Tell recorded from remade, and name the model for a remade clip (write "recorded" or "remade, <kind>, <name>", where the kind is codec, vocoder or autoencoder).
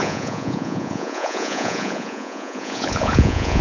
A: remade, vocoder, Vocos